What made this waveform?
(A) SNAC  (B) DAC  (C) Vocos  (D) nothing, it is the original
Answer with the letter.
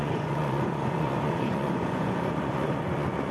C